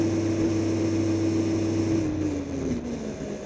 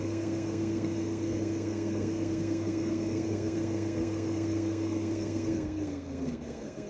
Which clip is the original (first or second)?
first